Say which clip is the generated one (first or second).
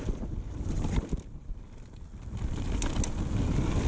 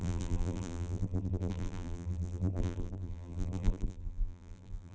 second